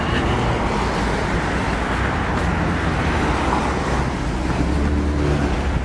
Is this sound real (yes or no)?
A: yes